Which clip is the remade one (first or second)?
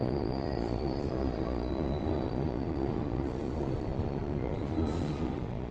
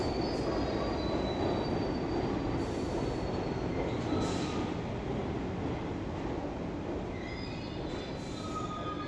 first